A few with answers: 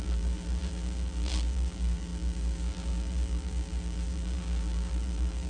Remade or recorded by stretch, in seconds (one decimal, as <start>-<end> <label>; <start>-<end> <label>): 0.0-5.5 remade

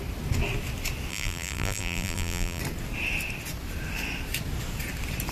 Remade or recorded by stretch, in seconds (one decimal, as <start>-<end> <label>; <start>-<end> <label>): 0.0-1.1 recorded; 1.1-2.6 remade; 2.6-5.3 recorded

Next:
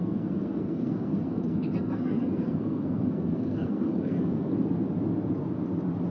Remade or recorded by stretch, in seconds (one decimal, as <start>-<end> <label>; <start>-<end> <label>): 0.0-4.5 remade; 4.5-6.1 recorded

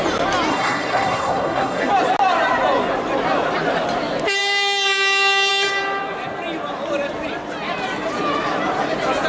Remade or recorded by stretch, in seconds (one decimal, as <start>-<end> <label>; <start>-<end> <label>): 0.0-0.5 recorded; 0.5-1.9 remade; 1.9-9.3 recorded

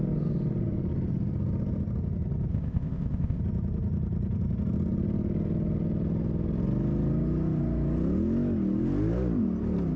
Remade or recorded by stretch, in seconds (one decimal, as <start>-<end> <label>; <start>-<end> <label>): 0.0-2.5 recorded; 2.5-3.4 remade; 3.4-10.0 recorded

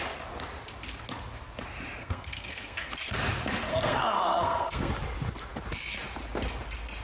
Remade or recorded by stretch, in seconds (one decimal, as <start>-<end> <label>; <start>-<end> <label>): 0.0-2.0 recorded; 2.0-2.9 remade; 2.9-3.7 recorded; 3.7-4.9 remade; 4.9-7.0 recorded

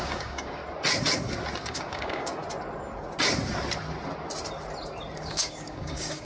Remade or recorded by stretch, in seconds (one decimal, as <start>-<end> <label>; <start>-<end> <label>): 0.0-0.6 remade; 0.6-1.6 recorded; 1.6-2.4 remade; 2.4-5.2 recorded; 5.2-6.2 remade

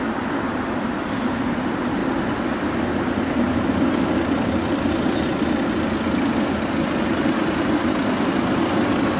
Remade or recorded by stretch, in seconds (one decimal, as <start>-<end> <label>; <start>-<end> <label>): 0.0-9.2 recorded